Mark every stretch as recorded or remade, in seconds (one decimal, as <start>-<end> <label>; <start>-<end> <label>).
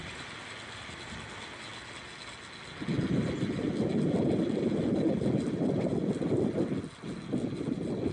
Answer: 0.0-8.1 recorded